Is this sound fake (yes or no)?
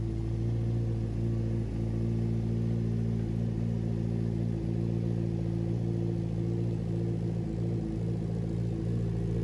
no